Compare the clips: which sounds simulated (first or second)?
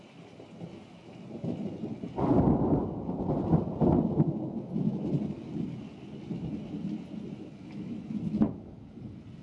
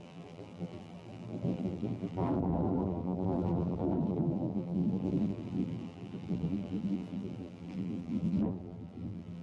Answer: second